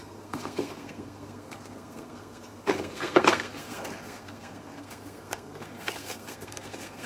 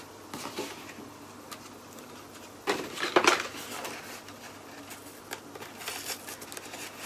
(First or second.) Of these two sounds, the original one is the second